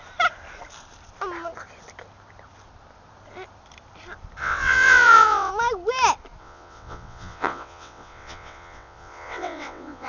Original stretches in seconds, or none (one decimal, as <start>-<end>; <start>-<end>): 0.0-4.4; 5.5-6.4